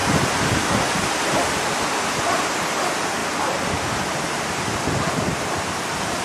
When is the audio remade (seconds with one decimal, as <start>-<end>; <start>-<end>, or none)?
none